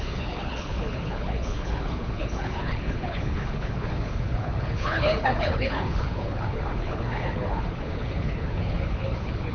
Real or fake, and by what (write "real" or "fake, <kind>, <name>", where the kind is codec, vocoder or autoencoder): fake, codec, HILCodec